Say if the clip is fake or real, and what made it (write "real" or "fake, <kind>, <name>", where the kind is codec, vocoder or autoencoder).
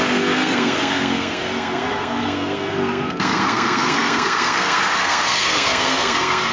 fake, codec, SNAC